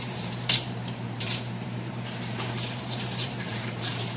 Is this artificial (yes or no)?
yes